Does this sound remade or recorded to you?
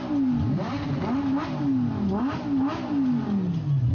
recorded